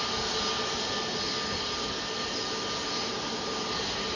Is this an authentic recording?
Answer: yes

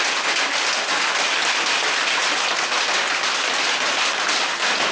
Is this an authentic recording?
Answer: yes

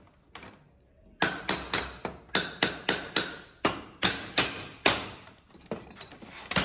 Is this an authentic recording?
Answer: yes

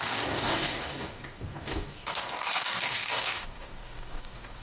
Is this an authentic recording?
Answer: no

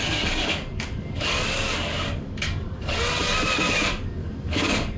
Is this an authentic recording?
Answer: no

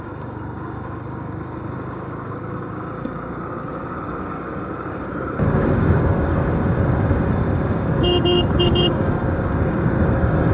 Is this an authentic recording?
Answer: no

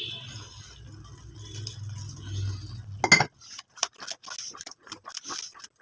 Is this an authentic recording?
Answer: yes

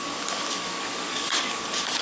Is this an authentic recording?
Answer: no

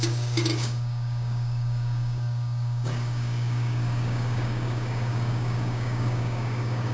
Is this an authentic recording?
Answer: no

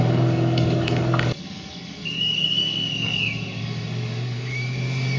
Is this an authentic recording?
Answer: no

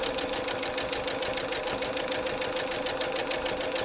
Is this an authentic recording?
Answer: yes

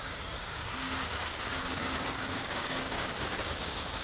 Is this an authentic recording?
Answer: no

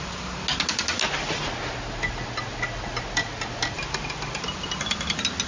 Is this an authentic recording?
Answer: yes